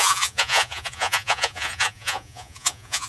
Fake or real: fake